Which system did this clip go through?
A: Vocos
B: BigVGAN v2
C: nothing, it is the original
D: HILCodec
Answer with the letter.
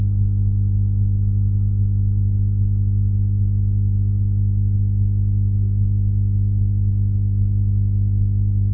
A